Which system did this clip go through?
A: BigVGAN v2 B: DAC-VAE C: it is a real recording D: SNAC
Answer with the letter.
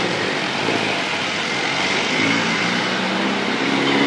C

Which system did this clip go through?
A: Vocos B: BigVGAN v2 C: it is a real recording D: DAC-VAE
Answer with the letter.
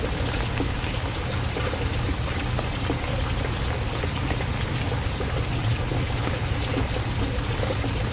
C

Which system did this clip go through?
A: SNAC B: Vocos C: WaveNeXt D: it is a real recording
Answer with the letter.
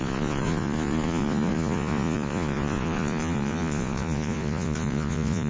B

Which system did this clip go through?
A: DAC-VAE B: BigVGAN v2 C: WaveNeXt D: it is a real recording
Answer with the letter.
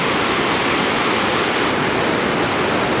D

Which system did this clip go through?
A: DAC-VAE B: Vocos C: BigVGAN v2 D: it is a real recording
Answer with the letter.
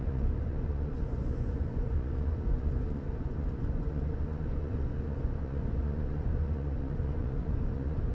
B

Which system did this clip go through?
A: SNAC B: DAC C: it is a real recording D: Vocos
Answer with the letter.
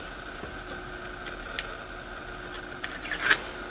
C